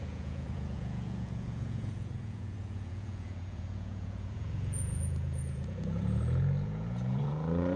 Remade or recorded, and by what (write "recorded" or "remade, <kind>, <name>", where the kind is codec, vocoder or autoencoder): remade, vocoder, Vocos